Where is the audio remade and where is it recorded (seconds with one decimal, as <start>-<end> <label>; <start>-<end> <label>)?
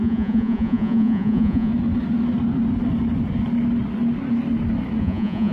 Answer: 0.0-1.7 remade; 1.7-5.0 recorded; 5.0-5.5 remade